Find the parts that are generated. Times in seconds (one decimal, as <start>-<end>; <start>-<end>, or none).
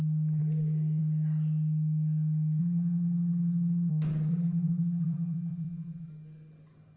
2.6-3.9; 4.3-6.1